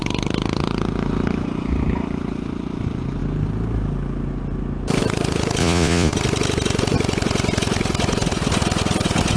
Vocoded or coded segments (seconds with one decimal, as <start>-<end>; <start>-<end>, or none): 5.6-6.1